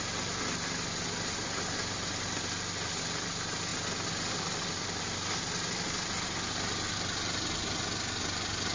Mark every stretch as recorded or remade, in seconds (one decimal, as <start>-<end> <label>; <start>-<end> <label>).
0.0-8.7 recorded